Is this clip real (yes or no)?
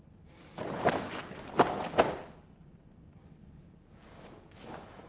yes